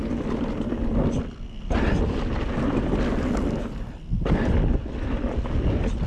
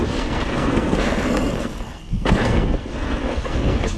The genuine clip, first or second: first